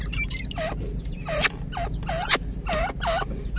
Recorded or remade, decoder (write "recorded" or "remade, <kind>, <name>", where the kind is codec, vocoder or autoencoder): recorded